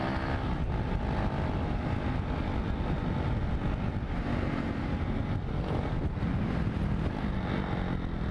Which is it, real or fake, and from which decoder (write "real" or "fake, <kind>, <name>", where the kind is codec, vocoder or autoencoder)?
real